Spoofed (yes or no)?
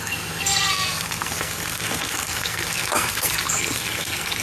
yes